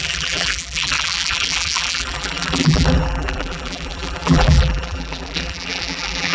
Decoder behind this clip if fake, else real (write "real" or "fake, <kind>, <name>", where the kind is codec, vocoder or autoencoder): fake, vocoder, BigVGAN v2